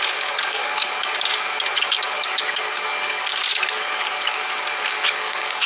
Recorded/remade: remade